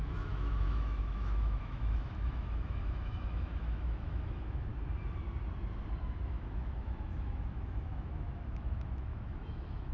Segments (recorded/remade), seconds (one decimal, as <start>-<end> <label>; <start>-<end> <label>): 0.0-4.7 remade; 4.7-6.0 recorded; 6.0-9.9 remade